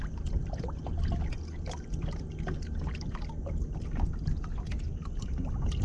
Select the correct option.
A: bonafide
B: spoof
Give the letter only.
A